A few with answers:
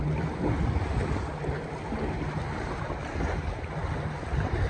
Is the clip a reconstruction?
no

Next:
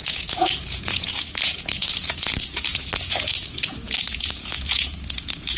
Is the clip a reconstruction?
yes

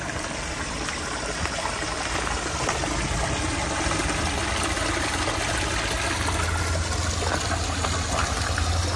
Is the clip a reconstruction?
no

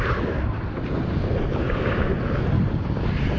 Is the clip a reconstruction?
no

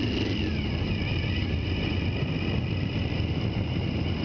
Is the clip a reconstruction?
no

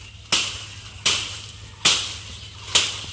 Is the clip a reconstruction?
no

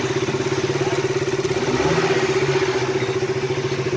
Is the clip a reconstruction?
no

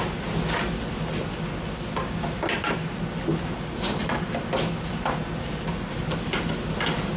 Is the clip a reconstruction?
no